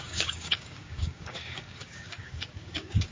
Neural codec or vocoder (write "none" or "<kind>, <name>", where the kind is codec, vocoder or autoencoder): codec, DAC